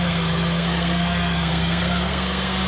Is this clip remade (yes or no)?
yes